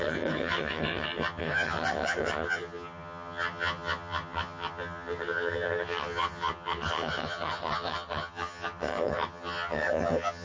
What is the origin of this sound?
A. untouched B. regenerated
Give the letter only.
B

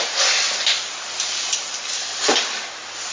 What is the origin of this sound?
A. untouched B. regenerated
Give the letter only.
A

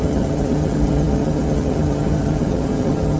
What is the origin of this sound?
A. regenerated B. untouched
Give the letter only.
A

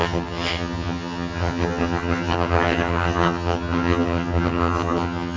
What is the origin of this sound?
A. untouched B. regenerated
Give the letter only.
B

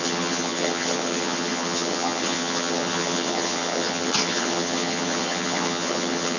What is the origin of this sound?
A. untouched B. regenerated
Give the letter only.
B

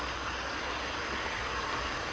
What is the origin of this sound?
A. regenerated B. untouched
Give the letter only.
B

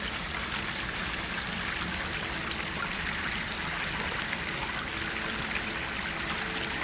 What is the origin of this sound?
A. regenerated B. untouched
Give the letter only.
B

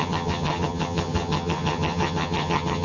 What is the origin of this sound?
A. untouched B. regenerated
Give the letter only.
B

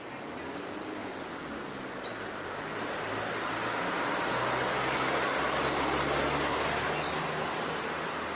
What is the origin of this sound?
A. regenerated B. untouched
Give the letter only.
B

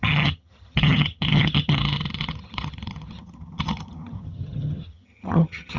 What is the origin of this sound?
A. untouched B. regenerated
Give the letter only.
B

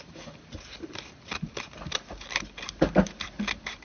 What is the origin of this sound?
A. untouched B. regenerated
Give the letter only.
A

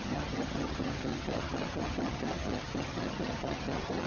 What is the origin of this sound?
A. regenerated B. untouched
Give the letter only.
A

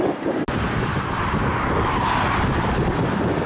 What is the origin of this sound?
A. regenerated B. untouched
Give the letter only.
B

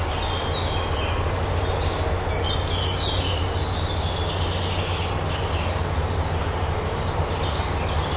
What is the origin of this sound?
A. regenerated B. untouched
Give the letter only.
B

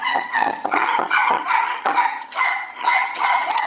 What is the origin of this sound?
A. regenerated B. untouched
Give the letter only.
A